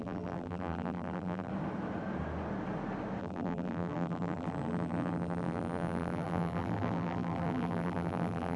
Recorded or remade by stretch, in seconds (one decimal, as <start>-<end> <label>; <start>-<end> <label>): 0.0-1.5 remade; 1.5-3.2 recorded; 3.2-8.6 remade